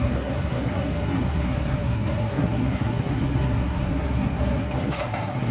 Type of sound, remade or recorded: remade